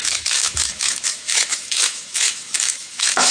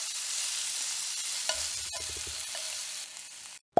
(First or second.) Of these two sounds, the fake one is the first